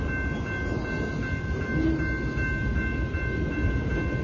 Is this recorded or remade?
recorded